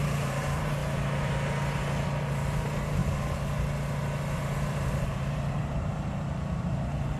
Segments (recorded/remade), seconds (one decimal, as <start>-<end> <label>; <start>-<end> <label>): 0.0-0.8 remade; 0.8-2.3 recorded; 2.3-3.0 remade; 3.0-4.4 recorded; 4.4-7.2 remade